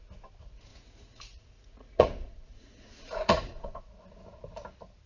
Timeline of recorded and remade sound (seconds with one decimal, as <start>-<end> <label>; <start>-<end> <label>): 0.0-0.7 recorded; 0.7-3.8 remade; 3.8-5.1 recorded